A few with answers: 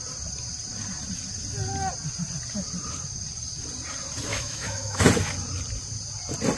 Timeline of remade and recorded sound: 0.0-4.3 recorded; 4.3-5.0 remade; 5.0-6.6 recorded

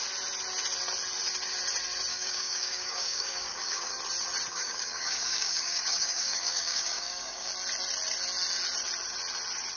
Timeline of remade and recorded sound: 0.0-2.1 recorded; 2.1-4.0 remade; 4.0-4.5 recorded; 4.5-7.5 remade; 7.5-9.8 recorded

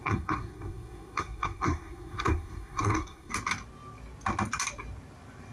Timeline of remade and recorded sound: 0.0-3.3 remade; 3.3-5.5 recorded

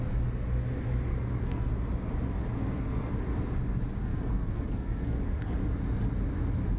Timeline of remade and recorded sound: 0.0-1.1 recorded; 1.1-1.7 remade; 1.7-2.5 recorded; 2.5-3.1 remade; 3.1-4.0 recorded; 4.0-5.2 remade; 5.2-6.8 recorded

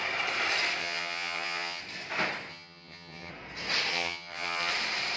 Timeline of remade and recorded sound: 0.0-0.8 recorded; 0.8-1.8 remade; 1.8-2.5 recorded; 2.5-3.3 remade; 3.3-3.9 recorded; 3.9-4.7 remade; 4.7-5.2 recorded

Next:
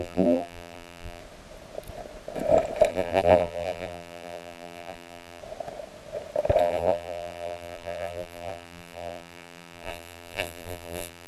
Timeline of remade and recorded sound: 0.0-1.2 remade; 1.2-2.9 recorded; 2.9-5.4 remade; 5.4-6.6 recorded; 6.6-11.3 remade

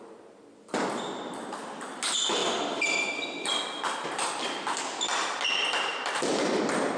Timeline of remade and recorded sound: 0.0-7.0 recorded